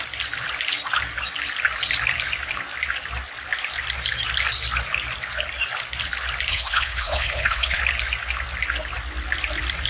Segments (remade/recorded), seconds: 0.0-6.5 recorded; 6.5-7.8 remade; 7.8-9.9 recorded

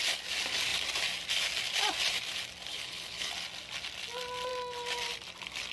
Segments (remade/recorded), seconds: 0.0-2.7 recorded; 2.7-3.3 remade; 3.3-5.7 recorded